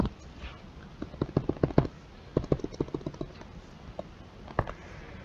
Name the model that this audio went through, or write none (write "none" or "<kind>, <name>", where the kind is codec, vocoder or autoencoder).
none